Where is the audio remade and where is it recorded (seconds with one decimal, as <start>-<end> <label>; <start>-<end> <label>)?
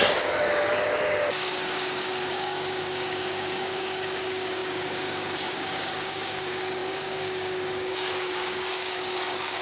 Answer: 0.0-9.6 remade